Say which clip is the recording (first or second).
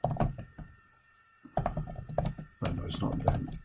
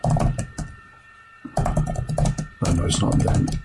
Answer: second